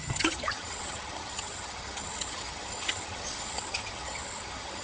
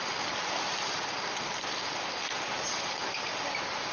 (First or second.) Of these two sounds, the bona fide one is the second